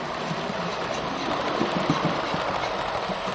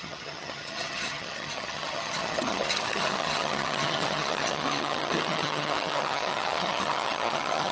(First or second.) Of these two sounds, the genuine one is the first